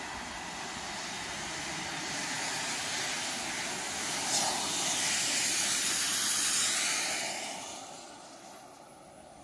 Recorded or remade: recorded